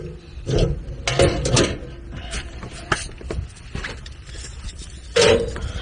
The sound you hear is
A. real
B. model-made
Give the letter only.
A